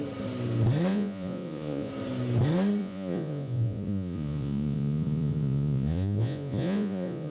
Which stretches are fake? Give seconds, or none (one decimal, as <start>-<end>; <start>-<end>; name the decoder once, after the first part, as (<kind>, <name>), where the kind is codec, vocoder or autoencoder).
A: 0.9-1.9 (vocoder, Vocos); 2.8-7.3